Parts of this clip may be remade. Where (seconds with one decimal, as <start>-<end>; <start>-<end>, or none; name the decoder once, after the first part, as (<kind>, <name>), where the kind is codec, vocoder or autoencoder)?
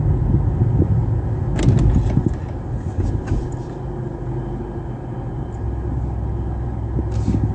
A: none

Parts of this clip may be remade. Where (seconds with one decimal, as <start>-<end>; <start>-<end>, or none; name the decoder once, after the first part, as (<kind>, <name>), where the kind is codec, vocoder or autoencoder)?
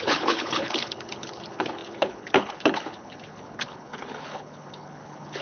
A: 0.0-5.4 (codec, HILCodec)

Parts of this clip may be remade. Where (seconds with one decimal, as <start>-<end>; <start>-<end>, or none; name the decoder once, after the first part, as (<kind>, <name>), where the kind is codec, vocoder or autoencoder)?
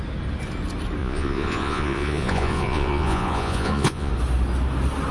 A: 1.0-4.1 (vocoder, Vocos)